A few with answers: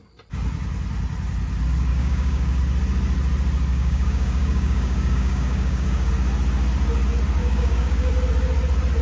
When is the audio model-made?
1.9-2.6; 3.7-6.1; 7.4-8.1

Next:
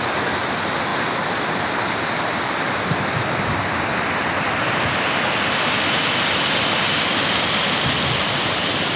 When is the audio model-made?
none